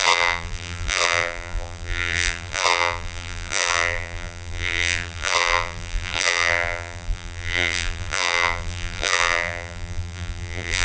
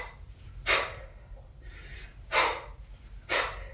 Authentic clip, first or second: second